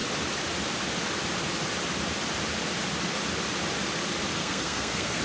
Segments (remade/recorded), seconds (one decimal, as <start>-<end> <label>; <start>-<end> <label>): 0.0-4.4 recorded; 4.4-5.2 remade